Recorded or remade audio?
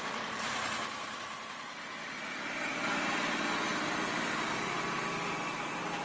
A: recorded